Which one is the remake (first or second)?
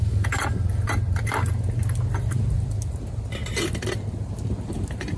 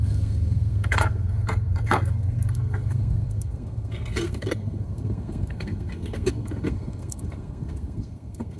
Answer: second